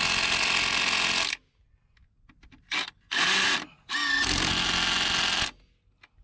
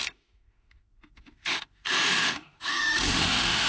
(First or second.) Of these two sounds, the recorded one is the first